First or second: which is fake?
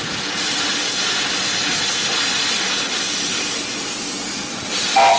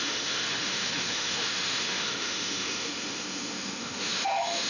second